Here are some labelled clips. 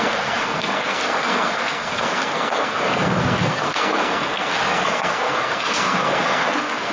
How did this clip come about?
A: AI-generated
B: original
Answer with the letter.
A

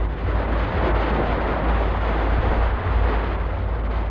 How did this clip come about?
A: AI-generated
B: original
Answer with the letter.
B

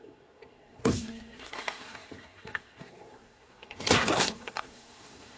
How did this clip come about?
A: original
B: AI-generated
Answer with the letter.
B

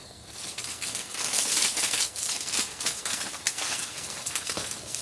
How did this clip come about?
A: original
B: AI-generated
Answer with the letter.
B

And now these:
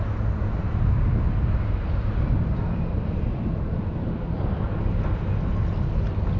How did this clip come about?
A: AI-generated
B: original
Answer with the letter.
B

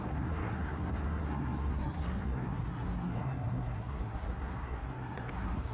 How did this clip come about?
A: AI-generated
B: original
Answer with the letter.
A